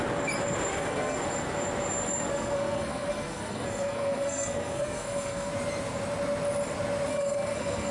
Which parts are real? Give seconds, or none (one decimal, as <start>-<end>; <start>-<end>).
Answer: 0.0-0.7; 1.2-2.3; 5.5-7.1